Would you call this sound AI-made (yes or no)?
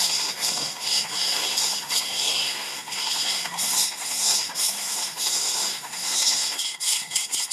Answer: yes